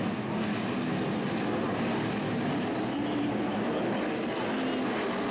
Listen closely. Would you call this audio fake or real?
real